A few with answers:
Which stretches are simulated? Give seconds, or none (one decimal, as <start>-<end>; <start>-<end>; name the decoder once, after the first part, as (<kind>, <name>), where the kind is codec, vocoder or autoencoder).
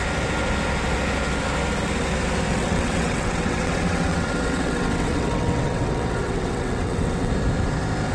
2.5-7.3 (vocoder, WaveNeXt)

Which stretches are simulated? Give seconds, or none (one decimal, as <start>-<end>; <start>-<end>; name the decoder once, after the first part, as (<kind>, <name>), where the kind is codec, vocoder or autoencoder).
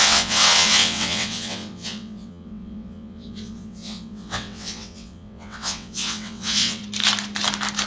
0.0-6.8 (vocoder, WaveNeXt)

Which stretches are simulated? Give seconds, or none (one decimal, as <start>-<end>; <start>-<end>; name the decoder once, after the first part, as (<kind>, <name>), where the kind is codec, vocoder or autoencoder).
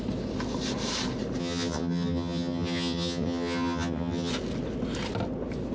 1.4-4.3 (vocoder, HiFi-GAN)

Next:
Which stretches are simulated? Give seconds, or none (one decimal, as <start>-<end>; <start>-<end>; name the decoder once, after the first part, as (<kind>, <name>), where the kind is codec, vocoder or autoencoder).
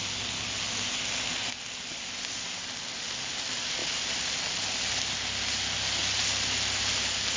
none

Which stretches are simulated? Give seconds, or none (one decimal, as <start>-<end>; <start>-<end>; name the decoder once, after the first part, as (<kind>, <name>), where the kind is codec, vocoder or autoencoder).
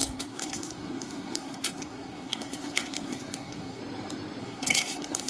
0.0-3.8 (codec, SNAC); 4.4-5.3